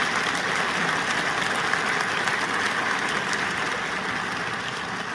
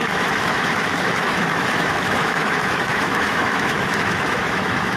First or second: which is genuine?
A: first